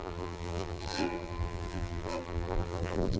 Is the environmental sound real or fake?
fake